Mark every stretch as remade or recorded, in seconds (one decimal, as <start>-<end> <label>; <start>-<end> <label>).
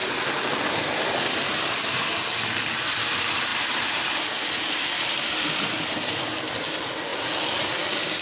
0.0-3.5 recorded; 3.5-6.2 remade; 6.2-8.2 recorded